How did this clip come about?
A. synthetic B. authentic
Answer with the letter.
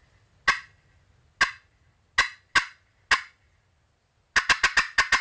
B